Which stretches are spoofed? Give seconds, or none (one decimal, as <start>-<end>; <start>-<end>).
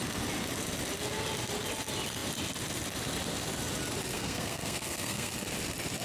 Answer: 4.1-5.3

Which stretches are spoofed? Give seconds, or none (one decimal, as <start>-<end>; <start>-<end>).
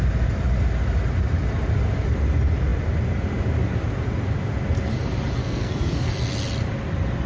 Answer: 5.4-6.1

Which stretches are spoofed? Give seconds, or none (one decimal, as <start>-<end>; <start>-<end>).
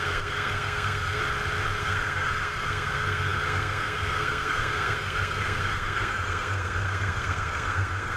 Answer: 0.0-1.2; 1.8-8.2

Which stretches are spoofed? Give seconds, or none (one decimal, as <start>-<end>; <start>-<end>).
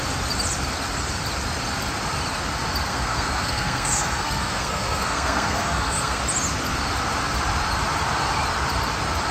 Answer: 2.9-6.2